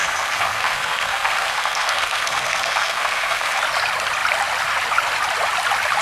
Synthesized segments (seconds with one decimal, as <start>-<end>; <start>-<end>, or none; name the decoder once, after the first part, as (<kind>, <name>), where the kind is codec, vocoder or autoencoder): 0.0-3.6 (codec, SNAC)